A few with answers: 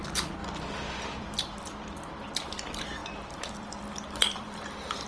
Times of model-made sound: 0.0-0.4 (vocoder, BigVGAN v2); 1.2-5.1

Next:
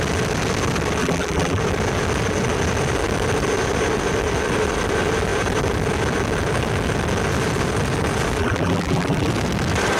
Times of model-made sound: 1.0-1.6 (vocoder, BigVGAN v2); 8.4-9.3

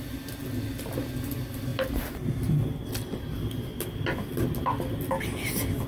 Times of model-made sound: none

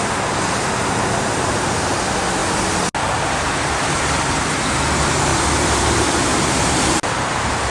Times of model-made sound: 5.3-7.0 (vocoder, BigVGAN v2)

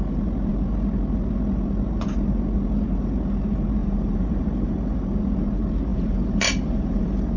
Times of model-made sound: 3.8-5.0 (vocoder, BigVGAN v2); 5.9-7.4

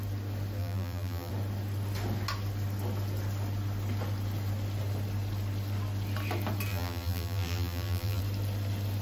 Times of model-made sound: 0.6-1.3 (vocoder, BigVGAN v2); 6.7-8.2

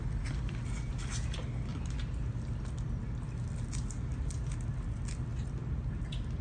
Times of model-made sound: none

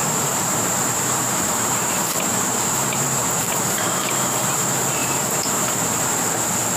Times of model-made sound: 0.0-4.1 (vocoder, BigVGAN v2); 5.0-6.3